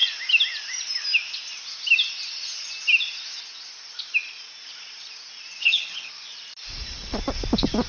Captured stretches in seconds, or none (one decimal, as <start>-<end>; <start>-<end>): 0.0-5.6; 6.1-7.9